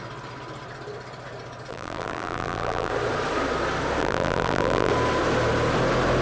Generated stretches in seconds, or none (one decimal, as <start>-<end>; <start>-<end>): 1.7-2.9; 4.0-4.9